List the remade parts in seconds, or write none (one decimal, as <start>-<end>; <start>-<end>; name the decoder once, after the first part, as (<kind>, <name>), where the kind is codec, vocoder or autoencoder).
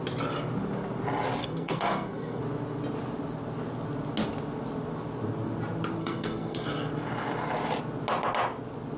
1.4-2.4 (codec, SNAC); 6.0-6.9